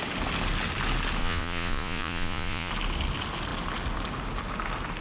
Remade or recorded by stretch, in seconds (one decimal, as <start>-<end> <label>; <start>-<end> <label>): 0.0-1.2 recorded; 1.2-2.7 remade; 2.7-5.0 recorded

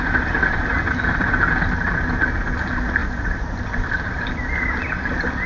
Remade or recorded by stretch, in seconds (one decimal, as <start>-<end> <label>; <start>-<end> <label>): 0.0-3.0 recorded; 3.0-4.3 remade; 4.3-5.5 recorded

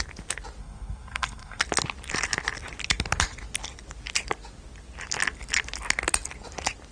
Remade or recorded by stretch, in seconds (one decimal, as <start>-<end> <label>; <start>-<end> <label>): 0.0-0.6 recorded; 0.6-1.6 remade; 1.6-6.9 recorded

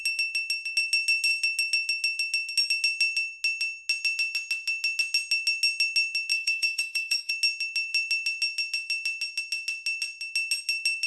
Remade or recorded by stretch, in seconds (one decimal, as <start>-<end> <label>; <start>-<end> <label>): 0.0-6.3 recorded; 6.3-7.3 remade; 7.3-11.1 recorded

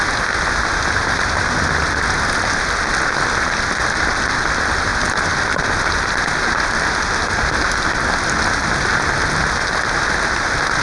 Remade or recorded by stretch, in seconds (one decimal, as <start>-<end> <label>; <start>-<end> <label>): 0.0-10.8 recorded

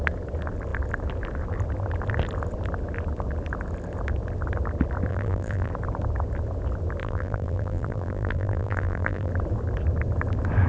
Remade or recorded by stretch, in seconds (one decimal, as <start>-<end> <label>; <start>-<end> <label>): 0.0-5.1 recorded; 5.1-5.7 remade; 5.7-7.0 recorded; 7.0-9.3 remade; 9.3-10.7 recorded